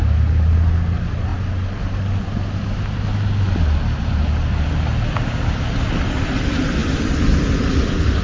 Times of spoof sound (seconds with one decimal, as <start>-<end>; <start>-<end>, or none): none